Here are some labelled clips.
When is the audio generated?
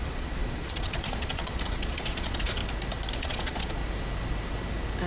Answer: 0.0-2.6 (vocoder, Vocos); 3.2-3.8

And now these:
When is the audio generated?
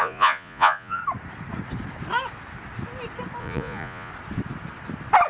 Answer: 0.0-1.0 (vocoder, Vocos); 3.4-4.1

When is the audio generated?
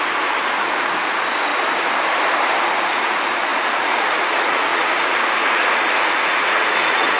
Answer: 0.0-1.5 (vocoder, Vocos); 2.6-7.2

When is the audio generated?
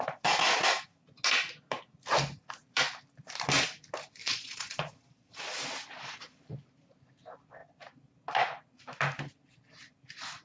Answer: 4.2-5.4 (vocoder, Vocos)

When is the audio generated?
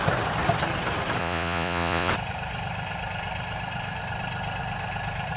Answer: 1.2-2.1 (vocoder, Vocos)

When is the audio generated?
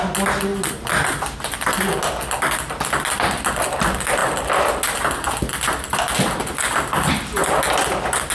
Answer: none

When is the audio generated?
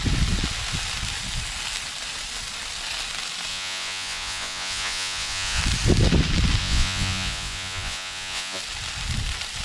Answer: 3.5-5.6 (vocoder, Vocos); 6.6-8.6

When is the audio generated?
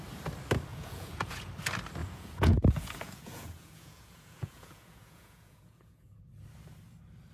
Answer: 0.7-1.5 (vocoder, Vocos); 2.0-6.2